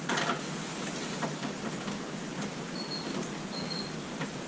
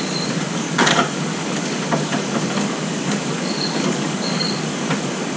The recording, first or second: first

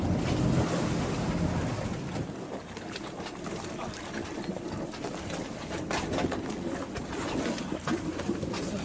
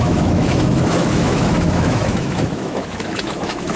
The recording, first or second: first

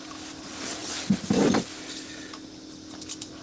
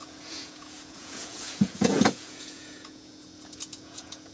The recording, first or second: first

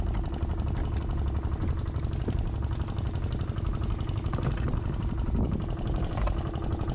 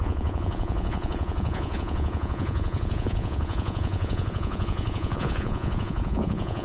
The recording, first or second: first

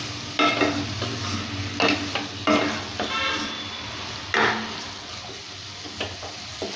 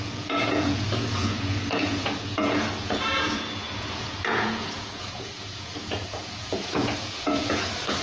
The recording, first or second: first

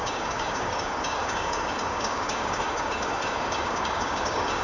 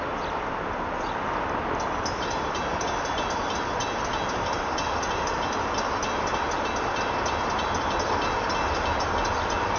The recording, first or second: second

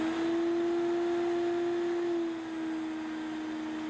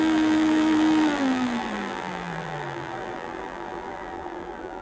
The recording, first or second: first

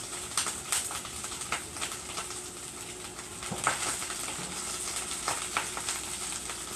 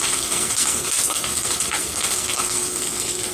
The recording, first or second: first